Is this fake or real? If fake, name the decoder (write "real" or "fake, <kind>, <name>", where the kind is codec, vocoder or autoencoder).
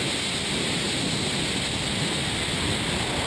real